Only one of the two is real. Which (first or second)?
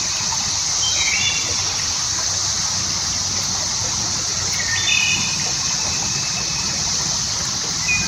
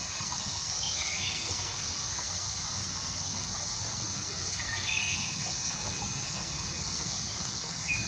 first